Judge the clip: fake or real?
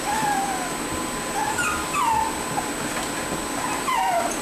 real